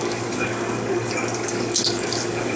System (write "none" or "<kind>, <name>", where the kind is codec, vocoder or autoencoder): codec, DAC